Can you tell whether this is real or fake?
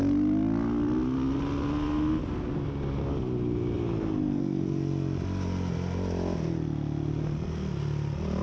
real